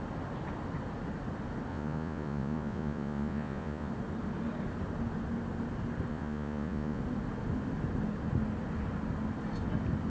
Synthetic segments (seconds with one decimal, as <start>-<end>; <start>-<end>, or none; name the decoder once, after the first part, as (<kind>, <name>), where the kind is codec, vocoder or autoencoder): 1.7-3.9 (vocoder, Vocos); 6.1-7.0